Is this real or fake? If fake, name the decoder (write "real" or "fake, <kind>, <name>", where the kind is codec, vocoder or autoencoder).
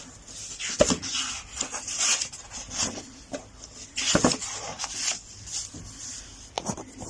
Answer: real